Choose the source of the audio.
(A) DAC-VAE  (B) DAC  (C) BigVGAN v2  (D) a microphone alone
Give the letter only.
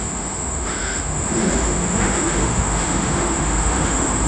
A